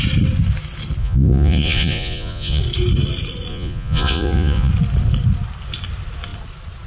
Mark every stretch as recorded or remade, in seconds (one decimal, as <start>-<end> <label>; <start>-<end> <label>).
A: 0.0-1.0 recorded; 1.0-2.6 remade; 2.6-3.5 recorded; 3.5-4.7 remade; 4.7-6.9 recorded